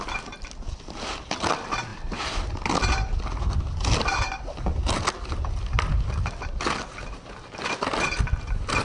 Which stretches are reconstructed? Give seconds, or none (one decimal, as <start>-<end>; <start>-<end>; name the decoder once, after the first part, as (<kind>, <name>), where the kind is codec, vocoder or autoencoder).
none